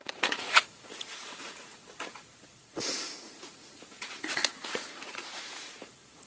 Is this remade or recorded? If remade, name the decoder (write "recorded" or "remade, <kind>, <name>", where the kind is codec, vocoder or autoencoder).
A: remade, vocoder, Vocos